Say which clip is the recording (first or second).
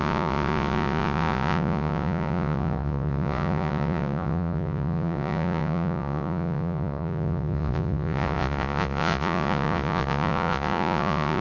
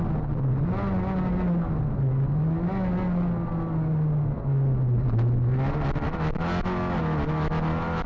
second